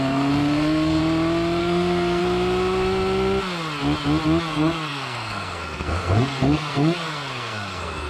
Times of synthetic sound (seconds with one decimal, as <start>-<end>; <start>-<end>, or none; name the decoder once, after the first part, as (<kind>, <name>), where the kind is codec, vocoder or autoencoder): 0.0-1.0 (codec, SNAC); 1.6-2.2; 4.4-8.1